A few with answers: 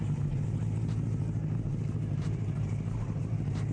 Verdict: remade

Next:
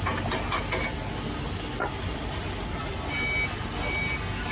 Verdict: recorded